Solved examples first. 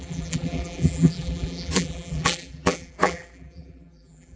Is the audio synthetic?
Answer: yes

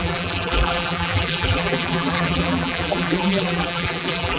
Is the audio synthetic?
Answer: yes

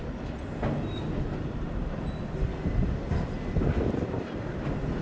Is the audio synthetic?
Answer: no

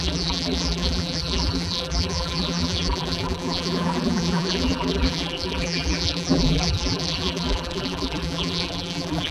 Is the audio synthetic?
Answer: yes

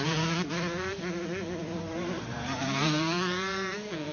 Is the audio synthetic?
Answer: yes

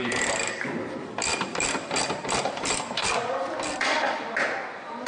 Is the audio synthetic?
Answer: yes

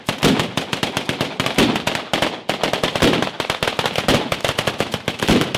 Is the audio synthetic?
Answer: no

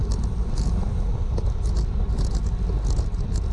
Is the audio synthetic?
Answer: no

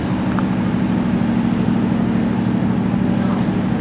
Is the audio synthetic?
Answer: no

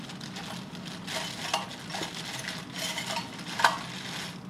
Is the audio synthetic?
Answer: no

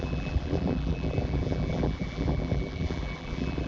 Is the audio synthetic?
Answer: yes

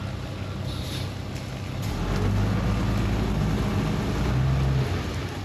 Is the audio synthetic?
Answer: no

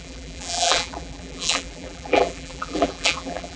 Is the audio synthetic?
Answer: yes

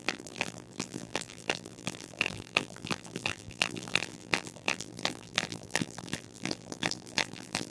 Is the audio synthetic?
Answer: yes